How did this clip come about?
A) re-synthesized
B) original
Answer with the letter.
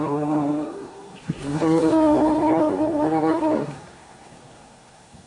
A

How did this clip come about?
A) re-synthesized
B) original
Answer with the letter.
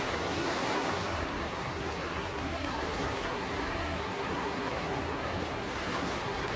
A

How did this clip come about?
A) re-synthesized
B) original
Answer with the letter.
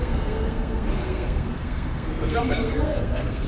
A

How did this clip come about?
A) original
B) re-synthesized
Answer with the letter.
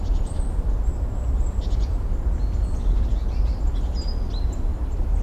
A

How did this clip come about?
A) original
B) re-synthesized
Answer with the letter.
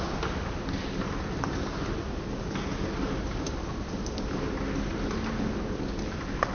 A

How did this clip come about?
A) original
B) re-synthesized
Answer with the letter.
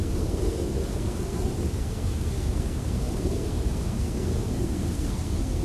B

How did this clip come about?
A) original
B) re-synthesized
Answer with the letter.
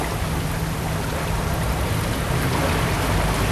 A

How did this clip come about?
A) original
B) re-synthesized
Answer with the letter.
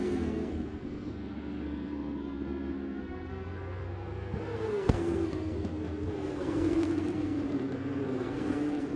B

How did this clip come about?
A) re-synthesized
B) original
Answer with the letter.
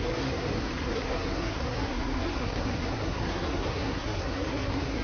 A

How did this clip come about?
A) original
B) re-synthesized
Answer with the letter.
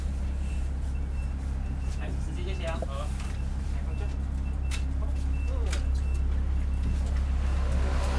A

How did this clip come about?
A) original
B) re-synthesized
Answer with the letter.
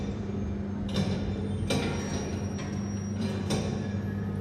A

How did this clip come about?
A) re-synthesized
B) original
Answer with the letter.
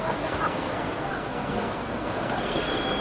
A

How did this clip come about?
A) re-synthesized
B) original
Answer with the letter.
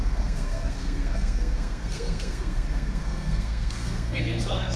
A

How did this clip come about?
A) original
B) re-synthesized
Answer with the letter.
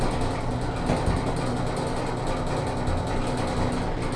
A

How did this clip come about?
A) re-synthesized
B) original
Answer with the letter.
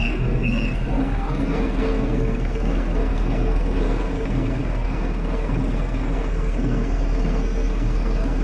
A